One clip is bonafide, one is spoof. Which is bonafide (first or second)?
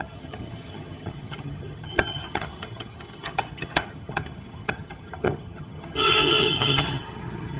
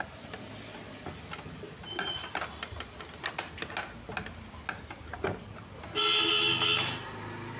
second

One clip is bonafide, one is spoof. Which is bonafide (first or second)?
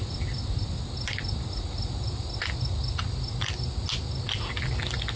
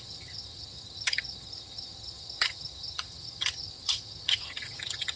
first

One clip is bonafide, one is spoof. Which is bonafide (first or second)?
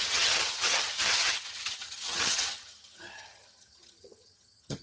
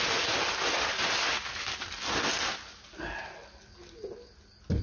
second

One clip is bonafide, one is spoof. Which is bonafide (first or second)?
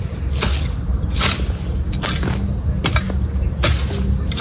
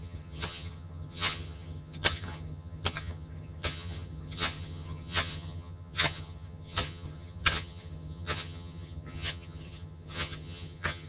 first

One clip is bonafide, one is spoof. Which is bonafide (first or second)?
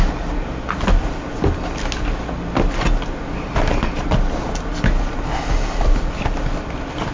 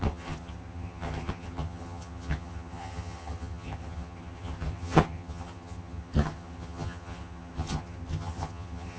first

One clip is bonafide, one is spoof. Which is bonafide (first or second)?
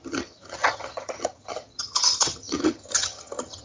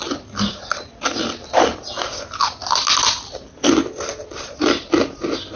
second